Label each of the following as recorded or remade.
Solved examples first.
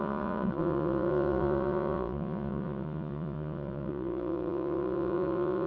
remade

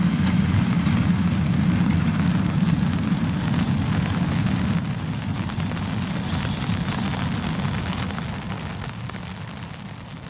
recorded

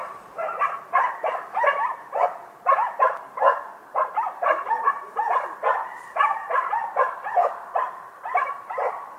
remade